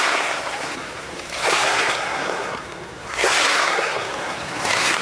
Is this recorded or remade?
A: remade